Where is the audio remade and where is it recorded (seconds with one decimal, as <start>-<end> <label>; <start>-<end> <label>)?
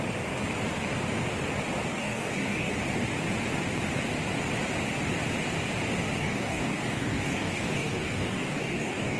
0.0-1.9 recorded; 1.9-2.7 remade; 2.7-6.2 recorded; 6.2-9.2 remade